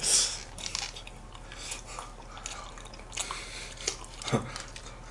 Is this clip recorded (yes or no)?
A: yes